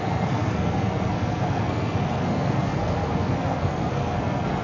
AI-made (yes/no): yes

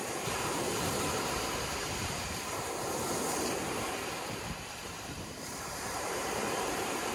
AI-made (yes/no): yes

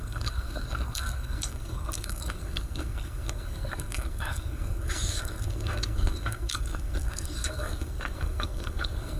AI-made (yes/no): yes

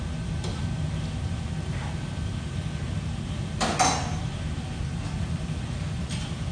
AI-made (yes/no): no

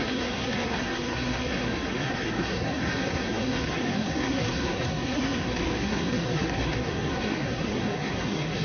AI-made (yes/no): yes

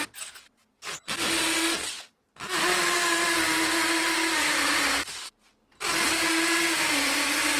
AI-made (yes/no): no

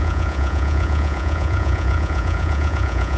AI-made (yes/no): yes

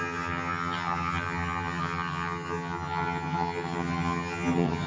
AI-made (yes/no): yes